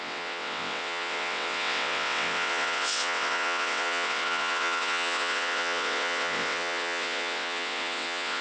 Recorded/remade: remade